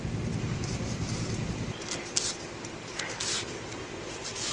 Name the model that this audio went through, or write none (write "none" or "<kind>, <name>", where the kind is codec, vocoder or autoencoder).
none